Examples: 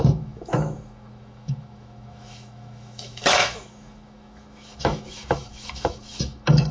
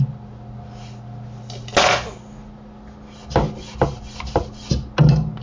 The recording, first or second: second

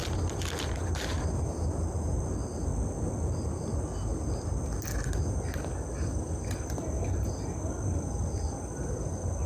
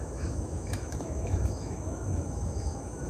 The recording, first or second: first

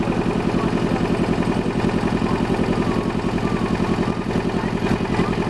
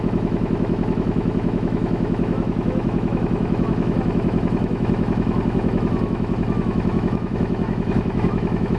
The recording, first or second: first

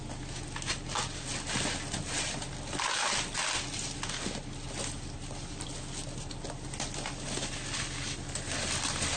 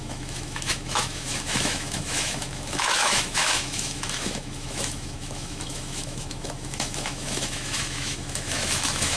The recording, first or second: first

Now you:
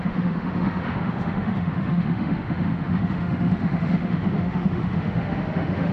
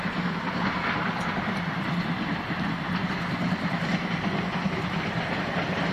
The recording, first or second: second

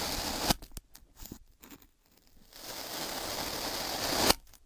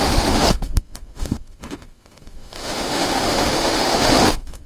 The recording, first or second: first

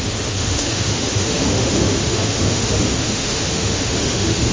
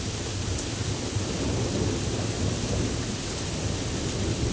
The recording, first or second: second